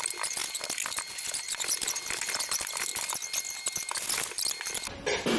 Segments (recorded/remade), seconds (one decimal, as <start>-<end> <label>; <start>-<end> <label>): 0.0-5.4 recorded